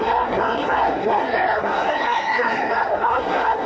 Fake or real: fake